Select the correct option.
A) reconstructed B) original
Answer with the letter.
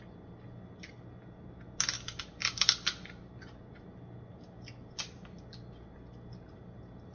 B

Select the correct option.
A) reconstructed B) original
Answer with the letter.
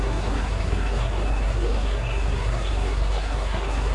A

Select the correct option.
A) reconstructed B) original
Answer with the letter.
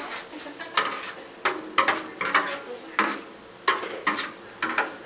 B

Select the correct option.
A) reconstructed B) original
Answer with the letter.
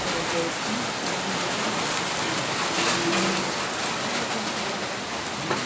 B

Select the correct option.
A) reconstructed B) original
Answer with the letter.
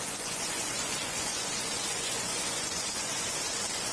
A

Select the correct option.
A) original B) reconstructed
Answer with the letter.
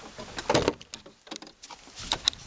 A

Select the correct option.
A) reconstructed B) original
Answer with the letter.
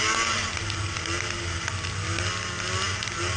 B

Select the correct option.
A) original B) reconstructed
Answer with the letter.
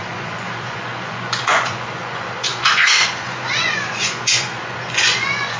B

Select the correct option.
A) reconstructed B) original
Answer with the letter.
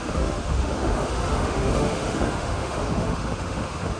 A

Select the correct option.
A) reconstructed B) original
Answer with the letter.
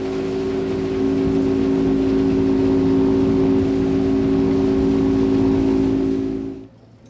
B